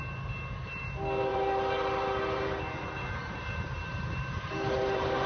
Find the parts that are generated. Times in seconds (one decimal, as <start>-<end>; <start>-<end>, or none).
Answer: 1.3-2.6; 3.2-5.3

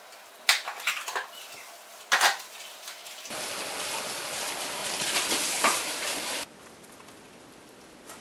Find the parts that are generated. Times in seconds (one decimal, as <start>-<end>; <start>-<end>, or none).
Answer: 4.8-6.6

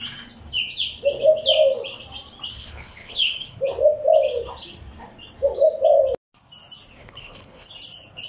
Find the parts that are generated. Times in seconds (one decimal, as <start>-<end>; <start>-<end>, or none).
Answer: 2.5-3.6; 7.0-7.7

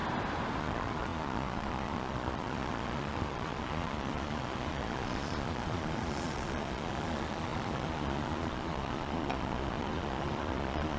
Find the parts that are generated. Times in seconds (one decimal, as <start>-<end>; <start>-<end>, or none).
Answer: 0.6-11.0

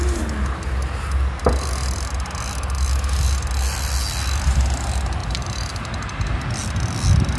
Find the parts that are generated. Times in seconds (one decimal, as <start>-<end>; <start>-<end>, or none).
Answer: 5.2-5.7

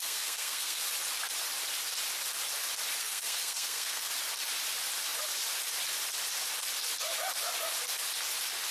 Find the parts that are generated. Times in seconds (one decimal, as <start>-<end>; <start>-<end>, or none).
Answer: 0.0-0.8; 3.0-4.1

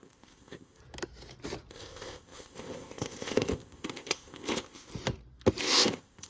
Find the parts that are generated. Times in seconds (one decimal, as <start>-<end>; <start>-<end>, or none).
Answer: 0.0-0.8; 1.7-4.9; 5.6-6.3

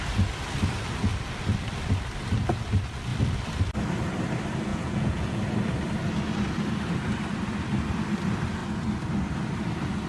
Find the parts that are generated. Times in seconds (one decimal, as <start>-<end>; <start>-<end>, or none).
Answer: 4.7-5.4